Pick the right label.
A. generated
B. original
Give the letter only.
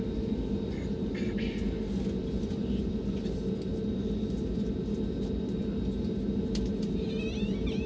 B